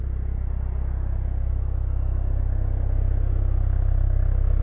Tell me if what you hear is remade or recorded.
recorded